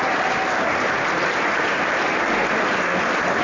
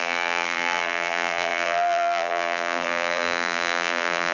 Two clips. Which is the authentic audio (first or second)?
first